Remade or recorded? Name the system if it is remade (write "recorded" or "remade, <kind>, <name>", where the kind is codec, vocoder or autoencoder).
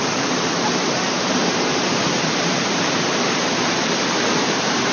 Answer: remade, vocoder, BigVGAN v2